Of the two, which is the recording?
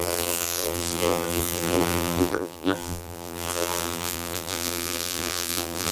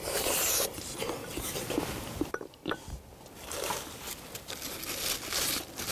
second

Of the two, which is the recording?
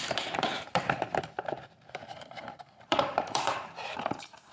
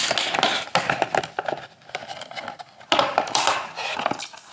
second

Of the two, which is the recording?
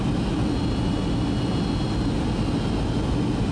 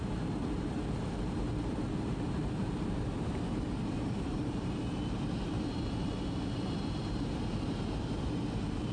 first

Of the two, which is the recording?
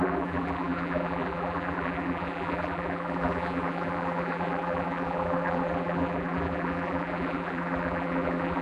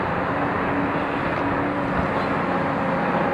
second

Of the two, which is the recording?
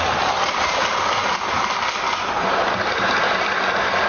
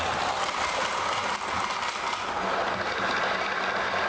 second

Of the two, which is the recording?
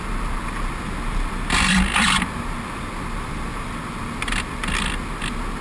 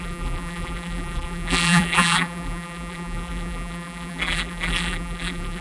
first